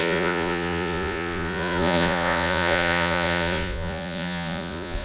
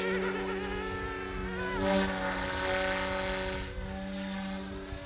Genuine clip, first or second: second